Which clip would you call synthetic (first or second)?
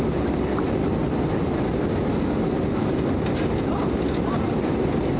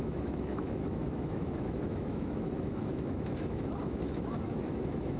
second